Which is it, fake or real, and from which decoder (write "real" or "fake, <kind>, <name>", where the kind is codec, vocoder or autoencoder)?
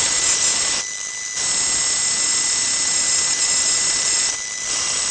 real